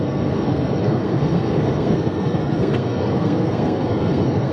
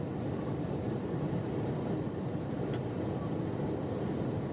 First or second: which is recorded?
second